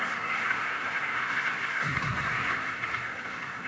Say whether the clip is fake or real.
fake